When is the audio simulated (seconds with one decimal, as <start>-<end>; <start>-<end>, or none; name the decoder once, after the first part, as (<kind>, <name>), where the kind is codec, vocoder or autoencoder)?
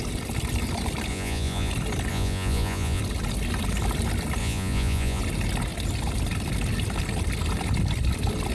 1.1-1.7 (vocoder, Vocos); 2.1-3.0; 4.4-5.2